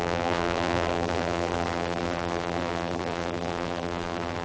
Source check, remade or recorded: remade